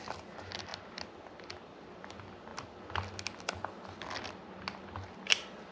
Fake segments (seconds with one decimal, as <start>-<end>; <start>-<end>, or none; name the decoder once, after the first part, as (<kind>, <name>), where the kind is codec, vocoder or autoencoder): none